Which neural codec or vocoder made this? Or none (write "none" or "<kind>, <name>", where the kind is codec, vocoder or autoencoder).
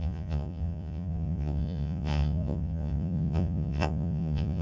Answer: vocoder, Vocos